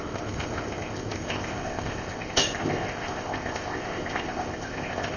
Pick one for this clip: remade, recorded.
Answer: remade